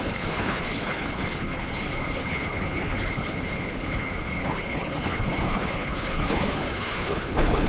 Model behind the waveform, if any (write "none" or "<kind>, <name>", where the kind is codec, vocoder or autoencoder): codec, HILCodec